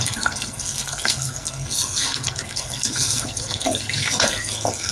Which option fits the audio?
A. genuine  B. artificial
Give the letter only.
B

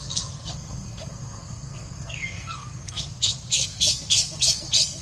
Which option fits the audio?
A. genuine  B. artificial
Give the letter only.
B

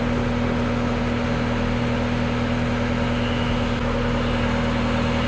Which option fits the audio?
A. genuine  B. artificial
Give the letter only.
A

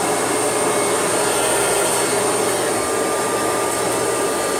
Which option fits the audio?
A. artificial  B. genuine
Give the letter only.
B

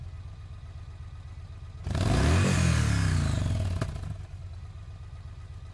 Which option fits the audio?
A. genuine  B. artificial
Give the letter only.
A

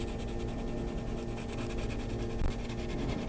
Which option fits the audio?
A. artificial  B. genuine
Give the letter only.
B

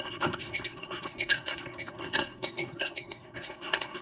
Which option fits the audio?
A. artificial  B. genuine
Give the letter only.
A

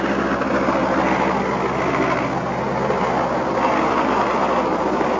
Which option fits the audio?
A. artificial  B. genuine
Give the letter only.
B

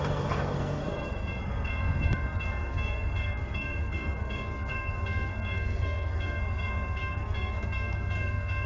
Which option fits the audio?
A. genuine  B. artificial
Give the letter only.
B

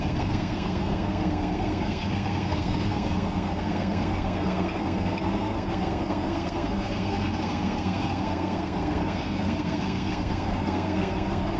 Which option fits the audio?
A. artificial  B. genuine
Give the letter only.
A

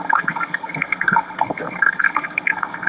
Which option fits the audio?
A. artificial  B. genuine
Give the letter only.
A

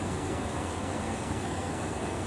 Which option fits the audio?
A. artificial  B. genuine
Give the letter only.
A